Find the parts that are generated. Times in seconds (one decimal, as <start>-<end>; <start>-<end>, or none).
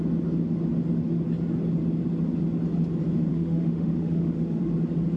3.3-4.6